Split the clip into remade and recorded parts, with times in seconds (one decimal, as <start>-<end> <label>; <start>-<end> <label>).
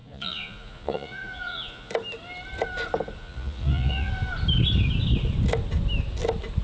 0.0-1.9 remade; 1.9-3.2 recorded; 3.2-4.1 remade; 4.1-6.6 recorded